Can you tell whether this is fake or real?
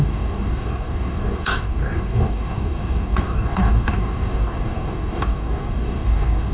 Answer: fake